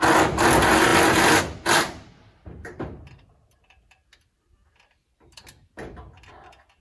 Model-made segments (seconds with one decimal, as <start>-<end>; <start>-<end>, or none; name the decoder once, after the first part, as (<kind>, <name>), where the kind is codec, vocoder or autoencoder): none